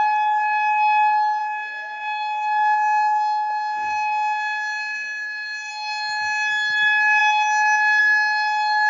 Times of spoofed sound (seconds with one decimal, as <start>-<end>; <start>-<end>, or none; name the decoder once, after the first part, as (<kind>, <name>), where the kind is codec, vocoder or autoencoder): 1.4-5.7 (codec, DAC)